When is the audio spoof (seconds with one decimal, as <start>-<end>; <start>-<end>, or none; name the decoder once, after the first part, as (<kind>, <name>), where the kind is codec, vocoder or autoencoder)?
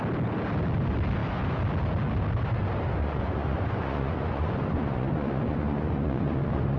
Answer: 3.0-6.8 (vocoder, Vocos)